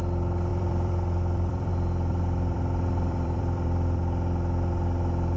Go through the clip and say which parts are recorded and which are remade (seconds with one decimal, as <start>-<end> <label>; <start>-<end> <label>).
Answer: 0.0-0.5 recorded; 0.5-1.7 remade; 1.7-2.1 recorded; 2.1-4.0 remade; 4.0-5.4 recorded

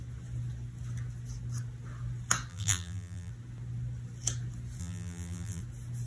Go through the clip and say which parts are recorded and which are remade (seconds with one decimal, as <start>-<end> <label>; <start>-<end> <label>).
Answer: 0.0-2.5 recorded; 2.5-3.3 remade; 3.3-4.8 recorded; 4.8-5.6 remade; 5.6-6.1 recorded

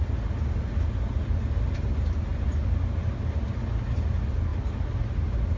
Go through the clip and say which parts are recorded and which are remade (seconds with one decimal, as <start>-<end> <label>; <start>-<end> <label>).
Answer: 0.0-5.6 recorded

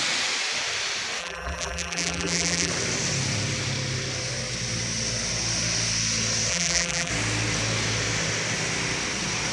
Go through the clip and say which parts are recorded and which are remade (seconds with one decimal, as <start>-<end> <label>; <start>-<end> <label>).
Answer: 0.0-1.2 recorded; 1.2-2.7 remade; 2.7-6.5 recorded; 6.5-7.1 remade; 7.1-9.5 recorded

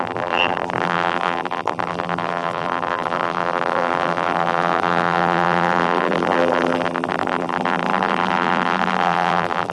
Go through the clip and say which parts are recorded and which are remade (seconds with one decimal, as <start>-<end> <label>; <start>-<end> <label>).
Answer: 0.0-9.7 remade